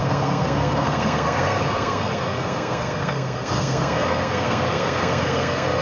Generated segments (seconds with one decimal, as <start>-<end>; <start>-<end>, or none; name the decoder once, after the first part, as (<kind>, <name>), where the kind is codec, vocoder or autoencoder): 0.0-5.8 (codec, SNAC)